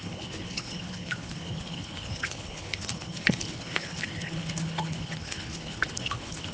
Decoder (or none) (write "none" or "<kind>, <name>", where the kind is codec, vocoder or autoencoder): codec, HILCodec